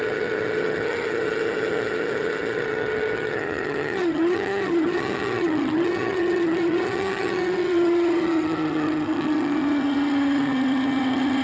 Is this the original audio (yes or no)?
no